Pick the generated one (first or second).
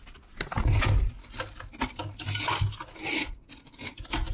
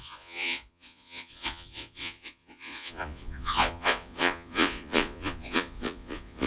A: second